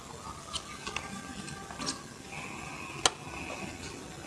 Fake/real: real